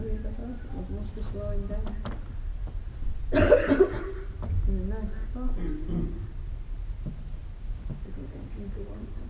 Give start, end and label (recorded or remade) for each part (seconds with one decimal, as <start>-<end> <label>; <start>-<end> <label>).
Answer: 0.0-9.3 recorded